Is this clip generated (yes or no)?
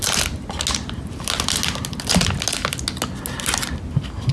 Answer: no